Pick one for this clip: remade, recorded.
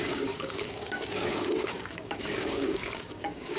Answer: remade